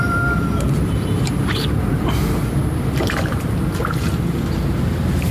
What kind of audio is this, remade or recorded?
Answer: remade